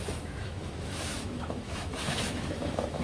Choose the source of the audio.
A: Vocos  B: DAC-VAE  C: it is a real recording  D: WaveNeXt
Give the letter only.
B